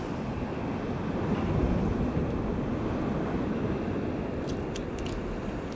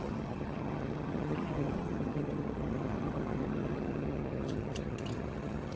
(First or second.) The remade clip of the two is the second